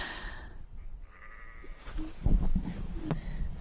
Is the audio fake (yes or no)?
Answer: no